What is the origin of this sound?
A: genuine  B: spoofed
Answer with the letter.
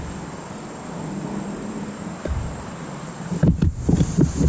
B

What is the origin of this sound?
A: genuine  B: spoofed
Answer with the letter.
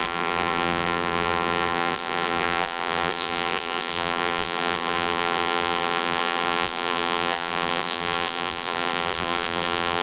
B